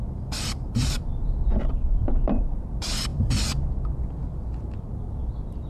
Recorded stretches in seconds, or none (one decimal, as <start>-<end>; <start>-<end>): 0.0-0.8; 2.4-3.1; 3.7-4.2